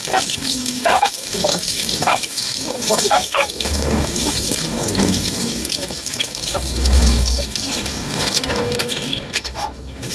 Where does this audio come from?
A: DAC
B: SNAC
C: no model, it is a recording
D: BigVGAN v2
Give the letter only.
A